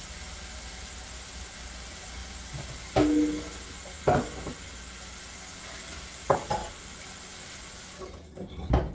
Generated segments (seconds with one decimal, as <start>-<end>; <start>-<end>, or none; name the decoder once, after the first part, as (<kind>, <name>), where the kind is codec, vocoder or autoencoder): none